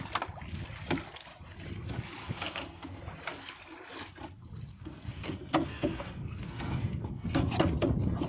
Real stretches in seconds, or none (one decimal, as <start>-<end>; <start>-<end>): 0.0-2.2; 3.0-4.7; 7.5-8.3